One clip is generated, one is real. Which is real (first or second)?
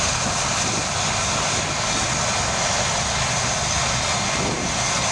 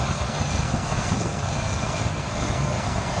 first